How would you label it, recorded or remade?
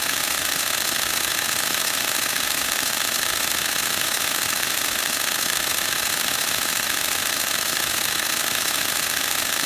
remade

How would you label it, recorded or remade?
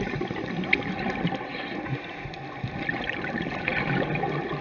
recorded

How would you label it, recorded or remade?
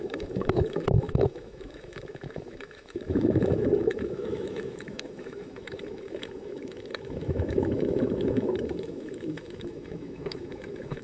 remade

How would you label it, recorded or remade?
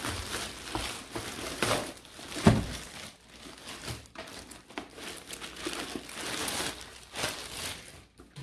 recorded